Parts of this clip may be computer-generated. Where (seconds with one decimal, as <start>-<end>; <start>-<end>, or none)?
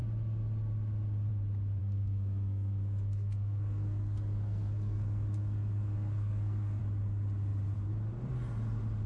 1.8-6.8